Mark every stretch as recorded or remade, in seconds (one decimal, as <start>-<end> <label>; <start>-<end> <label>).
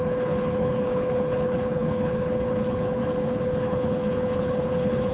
0.0-5.1 remade